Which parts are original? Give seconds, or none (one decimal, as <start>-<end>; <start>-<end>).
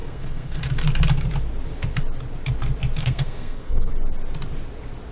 0.6-3.0; 3.9-5.1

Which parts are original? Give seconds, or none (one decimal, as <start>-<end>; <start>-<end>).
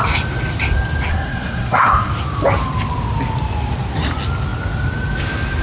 0.0-1.1; 2.1-5.6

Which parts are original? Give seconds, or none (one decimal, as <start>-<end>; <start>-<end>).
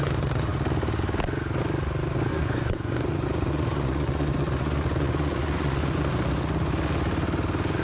0.0-2.3; 6.1-7.8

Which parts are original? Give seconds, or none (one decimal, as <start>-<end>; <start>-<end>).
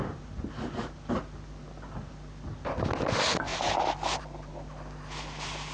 0.0-3.5; 4.5-5.7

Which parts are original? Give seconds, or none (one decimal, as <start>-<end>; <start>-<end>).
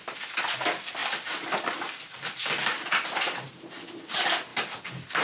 0.0-1.0; 3.5-5.2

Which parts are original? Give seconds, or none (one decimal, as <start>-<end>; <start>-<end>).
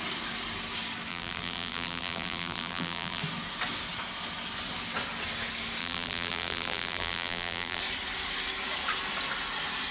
0.0-1.1; 3.2-5.8; 7.8-9.9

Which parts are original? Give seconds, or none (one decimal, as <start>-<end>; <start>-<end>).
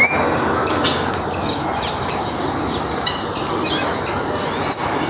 0.0-5.1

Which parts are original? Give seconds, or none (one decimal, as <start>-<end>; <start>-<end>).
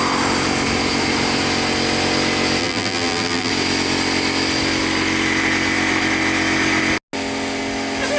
0.0-2.6; 3.5-8.2